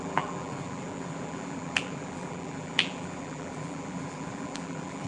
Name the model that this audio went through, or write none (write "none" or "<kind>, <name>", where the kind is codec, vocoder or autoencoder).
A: vocoder, BigVGAN v2